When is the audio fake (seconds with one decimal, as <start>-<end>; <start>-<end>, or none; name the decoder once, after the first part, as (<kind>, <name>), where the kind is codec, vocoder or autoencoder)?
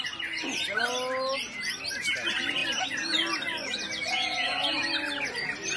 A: none